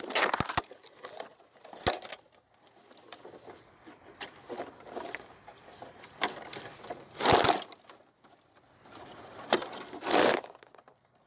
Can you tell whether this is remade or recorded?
recorded